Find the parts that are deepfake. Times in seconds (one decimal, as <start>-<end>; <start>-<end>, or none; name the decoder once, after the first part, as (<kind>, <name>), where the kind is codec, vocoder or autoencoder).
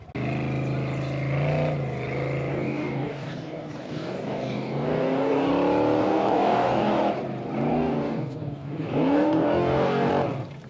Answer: 2.5-5.5 (codec, DAC); 6.0-7.0; 7.7-10.1